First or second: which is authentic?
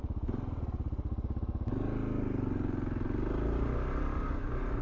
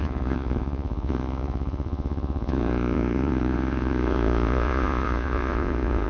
first